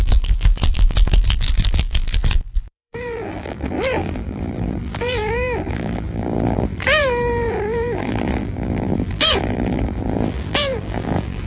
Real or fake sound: fake